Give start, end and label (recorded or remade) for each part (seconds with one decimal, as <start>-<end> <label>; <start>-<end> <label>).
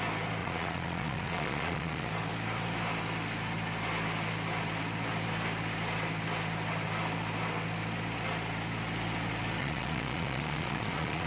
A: 0.0-0.4 recorded; 0.4-2.1 remade; 2.1-9.6 recorded; 9.6-11.3 remade